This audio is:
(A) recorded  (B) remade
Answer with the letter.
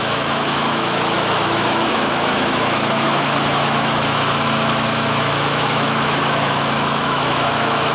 B